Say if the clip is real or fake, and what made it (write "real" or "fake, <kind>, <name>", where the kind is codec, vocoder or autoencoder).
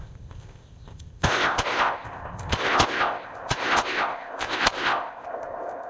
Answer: fake, codec, ZipCodec